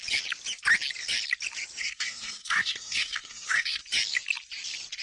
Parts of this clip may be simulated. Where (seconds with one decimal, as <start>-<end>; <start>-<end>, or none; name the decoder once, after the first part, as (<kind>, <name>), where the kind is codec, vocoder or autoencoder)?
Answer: 1.8-3.8 (codec, SNAC)